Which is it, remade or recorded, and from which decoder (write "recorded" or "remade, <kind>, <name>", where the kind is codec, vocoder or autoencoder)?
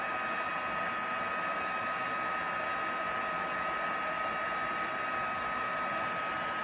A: recorded